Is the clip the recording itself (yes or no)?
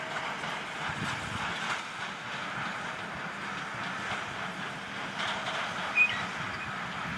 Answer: yes